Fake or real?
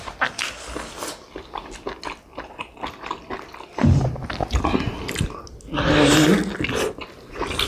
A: real